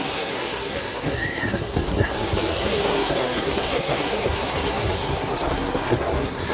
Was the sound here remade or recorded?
remade